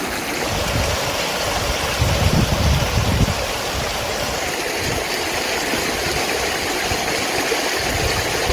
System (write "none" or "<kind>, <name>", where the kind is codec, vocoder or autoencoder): none